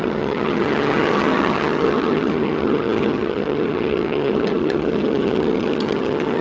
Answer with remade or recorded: remade